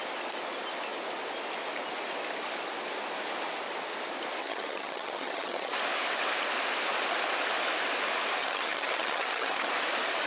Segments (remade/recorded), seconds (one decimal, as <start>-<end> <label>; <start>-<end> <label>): 0.0-4.4 recorded; 4.4-5.7 remade; 5.7-8.4 recorded; 8.4-9.7 remade; 9.7-10.3 recorded